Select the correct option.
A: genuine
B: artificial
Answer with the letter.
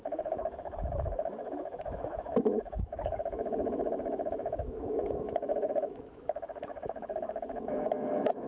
B